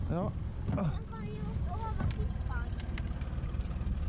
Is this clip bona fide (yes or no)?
yes